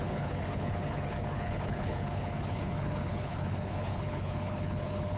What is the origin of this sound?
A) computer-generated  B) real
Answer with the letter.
A